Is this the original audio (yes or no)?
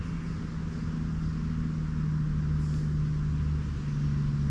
yes